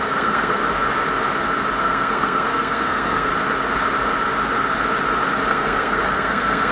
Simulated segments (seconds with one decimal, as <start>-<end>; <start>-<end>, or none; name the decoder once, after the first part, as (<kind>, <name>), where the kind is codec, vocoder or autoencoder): 0.0-0.6 (codec, SNAC); 1.8-3.3; 5.5-6.7